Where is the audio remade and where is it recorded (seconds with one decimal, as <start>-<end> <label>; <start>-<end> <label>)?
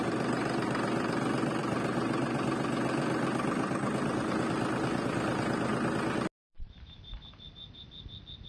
0.0-5.7 remade; 5.7-6.4 recorded; 6.4-8.5 remade